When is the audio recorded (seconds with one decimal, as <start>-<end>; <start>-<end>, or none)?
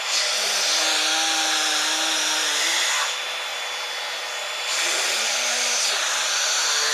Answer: 0.0-6.9